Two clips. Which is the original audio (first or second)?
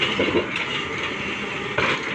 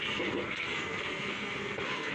first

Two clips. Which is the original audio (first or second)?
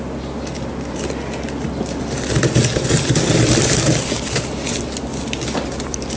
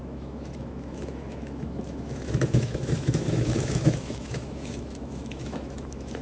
first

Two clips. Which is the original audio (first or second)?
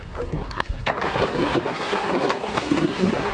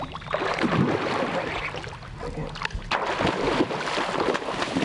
second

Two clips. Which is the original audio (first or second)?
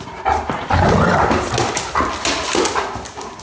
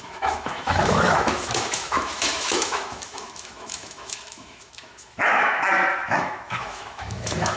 first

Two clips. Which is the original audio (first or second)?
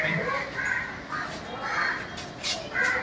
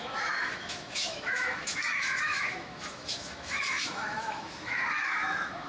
first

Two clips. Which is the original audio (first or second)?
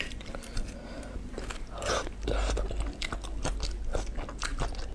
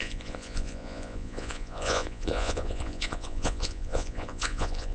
first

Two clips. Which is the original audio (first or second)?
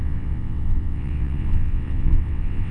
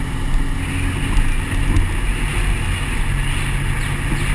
second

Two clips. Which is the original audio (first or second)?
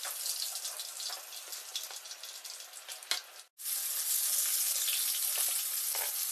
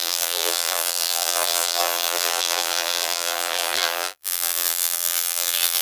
first